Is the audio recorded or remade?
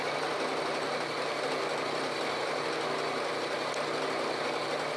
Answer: recorded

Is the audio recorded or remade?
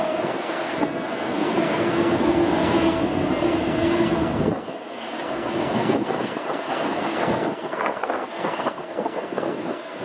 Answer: remade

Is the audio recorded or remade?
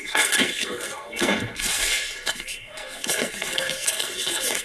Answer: remade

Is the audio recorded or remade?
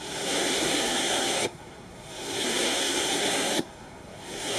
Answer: remade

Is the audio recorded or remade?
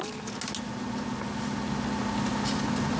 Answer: recorded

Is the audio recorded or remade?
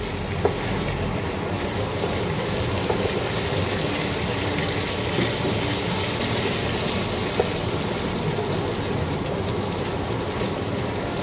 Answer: recorded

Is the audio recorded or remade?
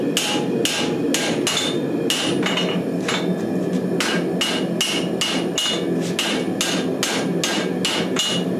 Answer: recorded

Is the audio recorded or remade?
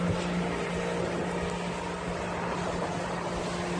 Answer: recorded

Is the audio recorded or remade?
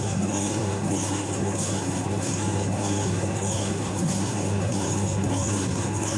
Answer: remade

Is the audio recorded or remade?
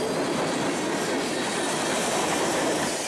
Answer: recorded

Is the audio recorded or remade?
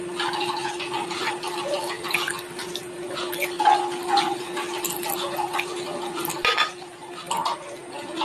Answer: recorded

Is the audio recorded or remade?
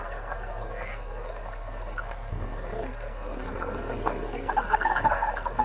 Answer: remade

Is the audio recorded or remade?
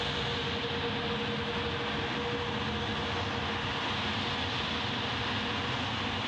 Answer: recorded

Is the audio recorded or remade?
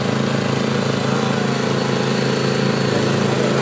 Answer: recorded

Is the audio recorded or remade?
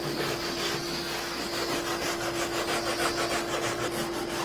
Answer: recorded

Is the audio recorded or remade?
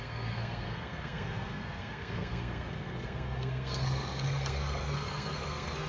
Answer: remade